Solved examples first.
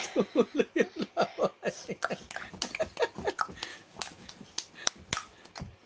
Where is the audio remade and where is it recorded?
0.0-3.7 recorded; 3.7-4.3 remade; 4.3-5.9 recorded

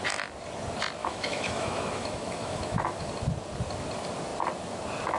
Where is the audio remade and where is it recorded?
0.0-1.0 recorded; 1.0-3.1 remade; 3.1-5.2 recorded

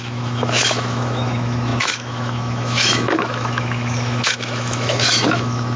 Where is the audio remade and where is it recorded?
0.0-5.8 remade

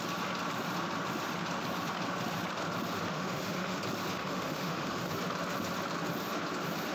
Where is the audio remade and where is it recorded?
0.0-3.1 recorded; 3.1-3.8 remade; 3.8-4.2 recorded; 4.2-5.1 remade; 5.1-6.9 recorded